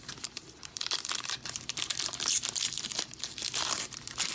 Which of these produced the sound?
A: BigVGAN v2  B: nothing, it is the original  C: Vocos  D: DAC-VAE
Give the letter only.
A